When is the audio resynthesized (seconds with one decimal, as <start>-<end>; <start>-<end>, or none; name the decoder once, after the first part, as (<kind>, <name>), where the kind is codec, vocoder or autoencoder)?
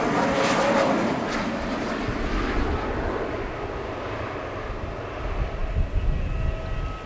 none